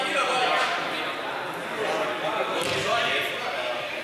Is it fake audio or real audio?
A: real